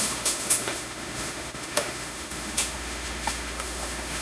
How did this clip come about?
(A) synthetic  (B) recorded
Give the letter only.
A